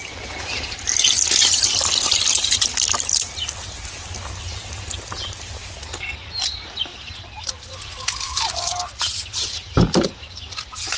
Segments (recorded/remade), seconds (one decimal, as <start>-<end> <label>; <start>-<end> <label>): 0.0-11.0 recorded